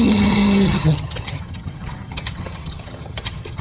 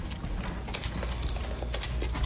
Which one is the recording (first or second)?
second